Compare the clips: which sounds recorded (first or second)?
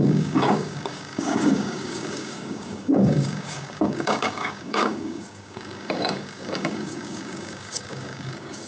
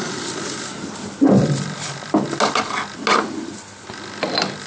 second